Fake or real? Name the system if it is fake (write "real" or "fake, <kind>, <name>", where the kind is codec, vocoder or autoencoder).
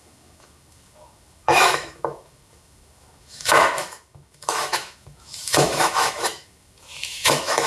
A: fake, autoencoder, DAC-VAE